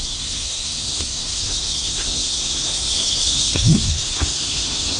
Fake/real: fake